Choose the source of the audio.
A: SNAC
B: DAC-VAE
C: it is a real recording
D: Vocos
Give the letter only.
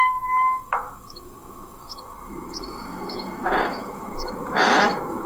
B